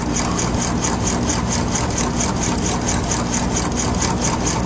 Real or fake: real